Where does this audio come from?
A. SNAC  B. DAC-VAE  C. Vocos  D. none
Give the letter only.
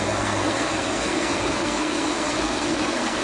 A